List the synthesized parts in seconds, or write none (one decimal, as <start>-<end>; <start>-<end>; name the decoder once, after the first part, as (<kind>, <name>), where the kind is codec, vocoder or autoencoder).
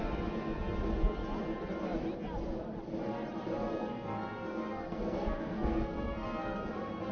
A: 3.7-6.6 (codec, SNAC)